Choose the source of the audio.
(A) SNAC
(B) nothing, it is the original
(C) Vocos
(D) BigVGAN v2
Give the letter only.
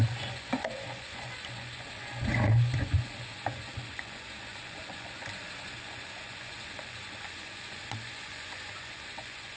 C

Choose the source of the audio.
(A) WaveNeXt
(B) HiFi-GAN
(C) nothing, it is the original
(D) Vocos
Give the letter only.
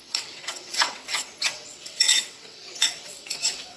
A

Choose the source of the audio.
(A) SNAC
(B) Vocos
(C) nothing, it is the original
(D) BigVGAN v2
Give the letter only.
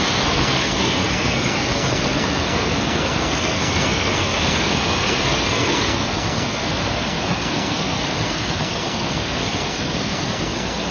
A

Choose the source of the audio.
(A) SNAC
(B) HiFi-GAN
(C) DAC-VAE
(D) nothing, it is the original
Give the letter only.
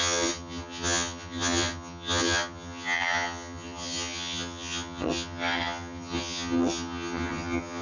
B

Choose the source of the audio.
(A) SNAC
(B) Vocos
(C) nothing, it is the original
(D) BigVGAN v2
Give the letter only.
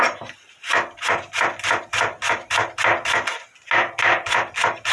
C